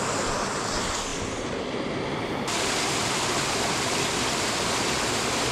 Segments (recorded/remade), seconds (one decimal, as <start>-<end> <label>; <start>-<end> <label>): 0.0-5.5 recorded